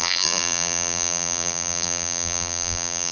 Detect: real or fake fake